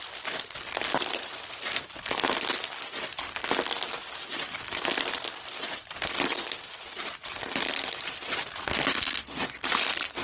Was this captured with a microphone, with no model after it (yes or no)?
no